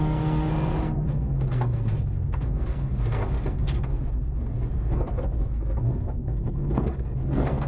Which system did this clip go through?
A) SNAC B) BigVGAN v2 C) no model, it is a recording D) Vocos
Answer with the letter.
A